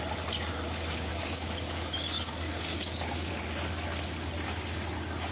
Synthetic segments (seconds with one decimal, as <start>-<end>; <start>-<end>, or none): 1.1-3.3